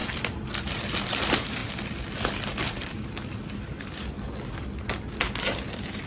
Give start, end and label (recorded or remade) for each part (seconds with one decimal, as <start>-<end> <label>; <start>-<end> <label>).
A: 0.0-1.1 recorded; 1.1-1.6 remade; 1.6-5.3 recorded; 5.3-6.1 remade